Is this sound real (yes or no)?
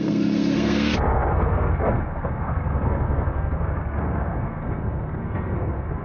no